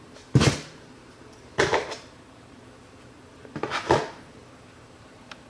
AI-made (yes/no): yes